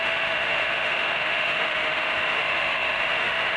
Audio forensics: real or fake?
fake